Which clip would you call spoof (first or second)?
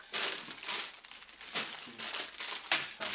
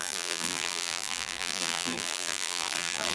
second